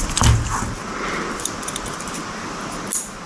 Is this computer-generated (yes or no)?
no